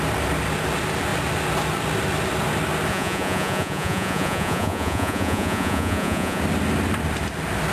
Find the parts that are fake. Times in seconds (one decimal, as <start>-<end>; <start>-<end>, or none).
2.9-6.4